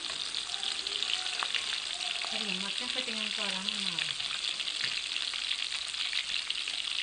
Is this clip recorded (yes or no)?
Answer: yes